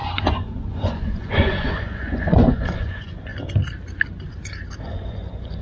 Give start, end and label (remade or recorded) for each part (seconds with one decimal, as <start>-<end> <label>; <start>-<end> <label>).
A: 0.0-3.3 remade; 3.3-4.8 recorded; 4.8-5.6 remade